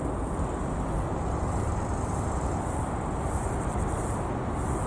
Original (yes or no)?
yes